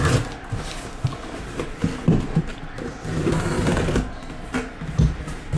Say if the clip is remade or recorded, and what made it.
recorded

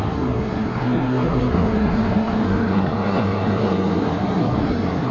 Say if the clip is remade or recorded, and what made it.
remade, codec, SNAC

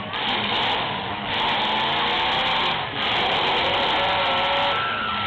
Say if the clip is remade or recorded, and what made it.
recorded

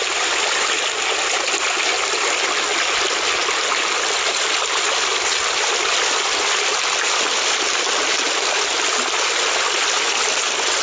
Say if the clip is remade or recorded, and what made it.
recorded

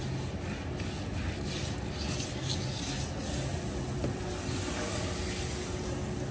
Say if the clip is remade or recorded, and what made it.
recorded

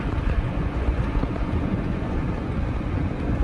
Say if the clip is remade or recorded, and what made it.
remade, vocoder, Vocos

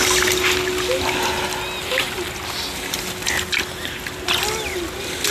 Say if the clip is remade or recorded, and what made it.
recorded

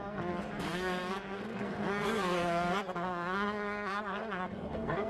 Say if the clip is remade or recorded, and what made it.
remade, codec, SNAC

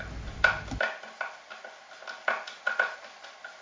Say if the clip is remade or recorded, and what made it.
recorded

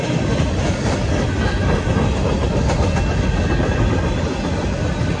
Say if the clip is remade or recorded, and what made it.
recorded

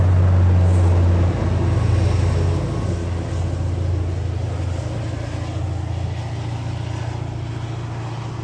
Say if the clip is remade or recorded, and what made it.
recorded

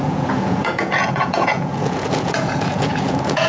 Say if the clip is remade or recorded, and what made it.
remade, vocoder, Vocos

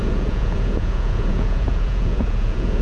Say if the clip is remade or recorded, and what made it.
remade, vocoder, Vocos